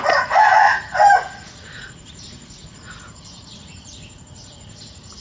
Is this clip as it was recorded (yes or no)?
no